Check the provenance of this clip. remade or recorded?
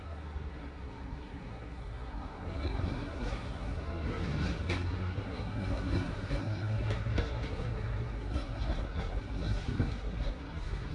remade